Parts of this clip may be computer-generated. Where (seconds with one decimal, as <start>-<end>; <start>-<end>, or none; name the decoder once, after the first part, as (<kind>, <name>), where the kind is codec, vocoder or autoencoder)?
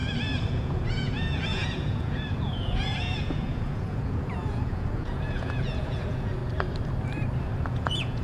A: 0.5-6.4 (vocoder, Vocos); 7.7-8.2